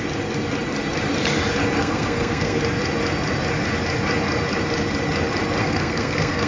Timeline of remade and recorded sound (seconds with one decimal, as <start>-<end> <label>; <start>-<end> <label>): 0.0-1.8 recorded; 1.8-2.6 remade; 2.6-5.6 recorded; 5.6-6.5 remade